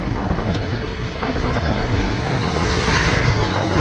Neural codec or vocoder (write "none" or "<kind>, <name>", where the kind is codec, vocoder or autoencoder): codec, SNAC